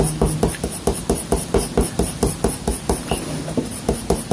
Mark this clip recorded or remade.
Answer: recorded